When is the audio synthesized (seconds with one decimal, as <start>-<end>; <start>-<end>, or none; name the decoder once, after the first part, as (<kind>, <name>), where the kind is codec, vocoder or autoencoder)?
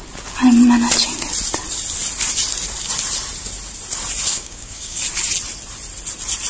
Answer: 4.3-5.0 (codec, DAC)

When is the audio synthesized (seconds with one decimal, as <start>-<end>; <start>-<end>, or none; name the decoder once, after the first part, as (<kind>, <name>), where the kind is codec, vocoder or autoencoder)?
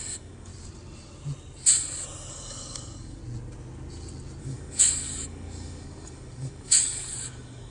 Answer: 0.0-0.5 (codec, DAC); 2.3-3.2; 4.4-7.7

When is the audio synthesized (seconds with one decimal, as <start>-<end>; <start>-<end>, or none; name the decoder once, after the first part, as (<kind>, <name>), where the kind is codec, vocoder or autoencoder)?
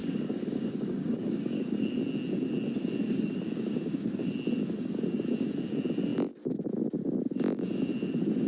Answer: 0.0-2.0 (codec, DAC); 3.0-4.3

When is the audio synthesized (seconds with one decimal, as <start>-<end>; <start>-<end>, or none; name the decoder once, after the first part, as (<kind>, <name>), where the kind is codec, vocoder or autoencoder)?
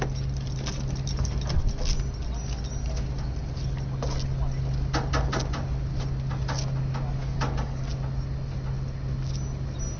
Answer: 7.2-7.8 (codec, DAC)